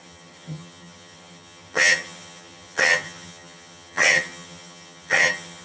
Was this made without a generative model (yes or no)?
no